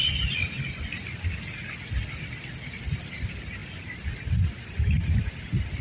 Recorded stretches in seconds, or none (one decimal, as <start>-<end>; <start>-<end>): 0.0-2.1; 3.6-5.3

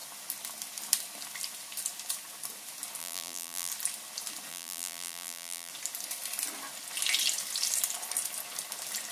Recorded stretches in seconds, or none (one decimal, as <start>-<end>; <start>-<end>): 0.0-3.0; 3.7-4.5; 5.7-9.1

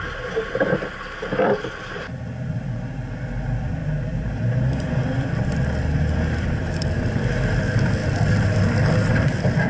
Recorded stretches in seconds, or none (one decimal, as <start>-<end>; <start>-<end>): none

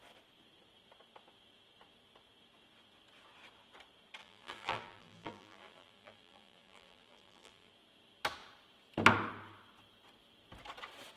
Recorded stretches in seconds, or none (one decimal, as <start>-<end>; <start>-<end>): 0.0-4.2; 7.7-11.2

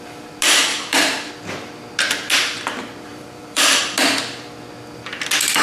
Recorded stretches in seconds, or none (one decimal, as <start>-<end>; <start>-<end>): 0.0-0.7; 1.3-3.1; 3.8-5.6

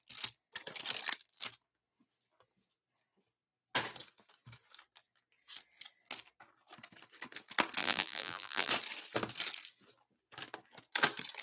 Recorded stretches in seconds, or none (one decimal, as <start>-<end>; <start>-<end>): 0.0-7.8; 8.7-11.4

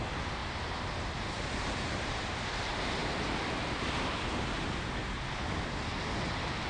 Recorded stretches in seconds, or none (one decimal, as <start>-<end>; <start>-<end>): 0.0-0.4; 2.1-6.7

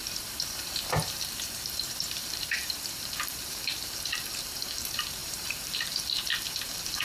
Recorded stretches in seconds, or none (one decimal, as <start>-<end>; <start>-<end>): none